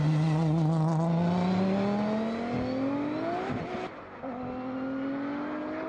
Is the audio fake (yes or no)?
no